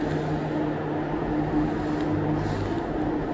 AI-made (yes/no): no